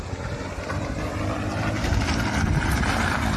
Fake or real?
real